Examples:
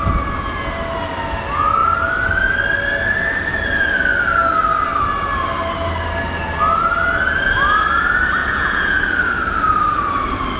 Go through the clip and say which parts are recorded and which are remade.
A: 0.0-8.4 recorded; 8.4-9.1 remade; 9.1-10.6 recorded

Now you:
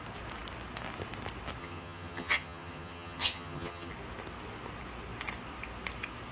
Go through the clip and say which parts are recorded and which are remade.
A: 0.0-1.6 recorded; 1.6-3.9 remade; 3.9-6.3 recorded

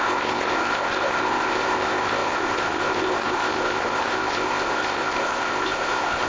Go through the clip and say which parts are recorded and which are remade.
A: 0.0-6.3 remade

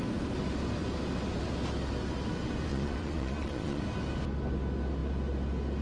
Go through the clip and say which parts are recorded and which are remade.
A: 0.0-2.7 recorded; 2.7-3.8 remade; 3.8-5.8 recorded